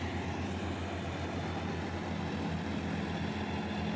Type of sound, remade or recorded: recorded